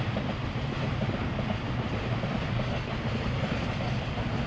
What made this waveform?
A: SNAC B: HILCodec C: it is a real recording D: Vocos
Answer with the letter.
C